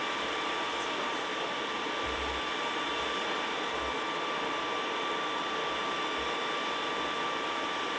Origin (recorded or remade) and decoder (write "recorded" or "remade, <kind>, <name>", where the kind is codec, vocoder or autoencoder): recorded